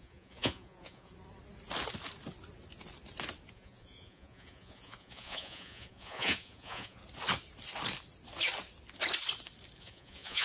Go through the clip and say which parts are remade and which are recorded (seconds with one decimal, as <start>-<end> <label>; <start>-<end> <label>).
0.0-1.1 remade; 1.1-3.5 recorded; 3.5-7.0 remade; 7.0-9.8 recorded; 9.8-10.4 remade